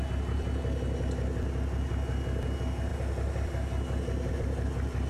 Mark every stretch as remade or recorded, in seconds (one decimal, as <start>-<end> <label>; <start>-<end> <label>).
0.0-5.1 recorded